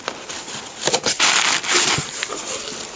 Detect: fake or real real